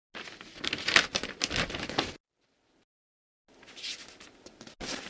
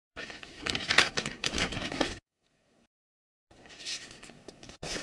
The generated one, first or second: second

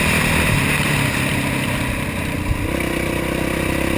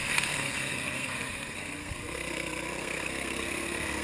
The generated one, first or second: second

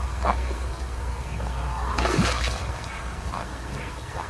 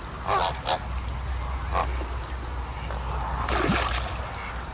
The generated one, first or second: first